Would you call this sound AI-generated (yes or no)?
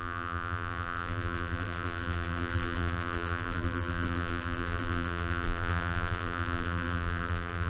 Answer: yes